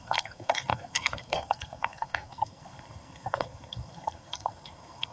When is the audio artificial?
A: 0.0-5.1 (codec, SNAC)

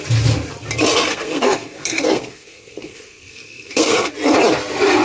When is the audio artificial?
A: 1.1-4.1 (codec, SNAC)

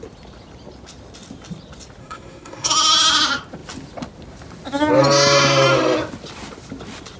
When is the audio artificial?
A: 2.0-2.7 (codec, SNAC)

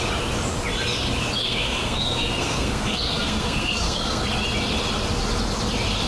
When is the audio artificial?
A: 1.4-4.2 (codec, SNAC)

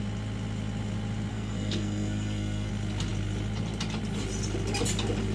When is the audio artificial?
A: 1.3-2.7 (codec, SNAC)